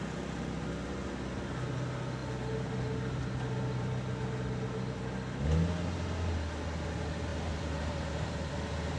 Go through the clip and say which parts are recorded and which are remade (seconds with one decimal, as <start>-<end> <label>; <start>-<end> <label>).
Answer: 0.0-7.3 recorded; 7.3-8.5 remade; 8.5-9.0 recorded